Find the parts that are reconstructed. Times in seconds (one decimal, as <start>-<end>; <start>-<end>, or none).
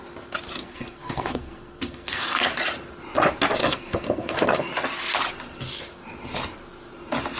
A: 0.6-2.5; 3.6-4.7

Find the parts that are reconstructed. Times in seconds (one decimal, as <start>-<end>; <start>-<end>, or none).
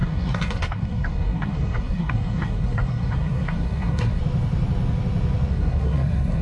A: 0.0-4.2; 5.5-6.4